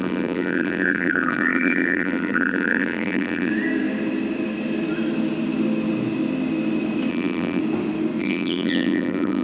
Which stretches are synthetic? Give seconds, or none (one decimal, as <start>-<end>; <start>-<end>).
0.0-3.5; 7.1-7.6; 8.2-9.4